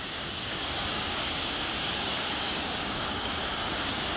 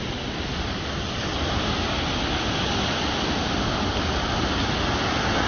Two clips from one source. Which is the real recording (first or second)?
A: second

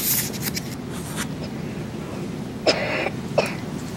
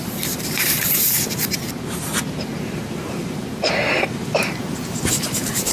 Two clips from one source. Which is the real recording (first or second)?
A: first